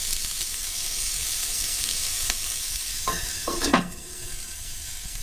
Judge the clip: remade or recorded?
remade